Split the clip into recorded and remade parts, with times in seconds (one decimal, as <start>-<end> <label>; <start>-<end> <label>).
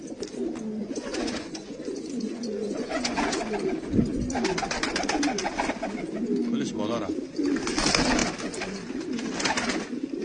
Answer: 0.0-0.8 recorded; 0.8-3.4 remade; 3.4-10.2 recorded